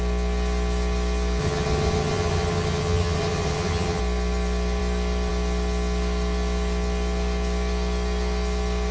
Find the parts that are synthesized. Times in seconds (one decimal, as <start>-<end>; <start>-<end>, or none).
1.4-4.0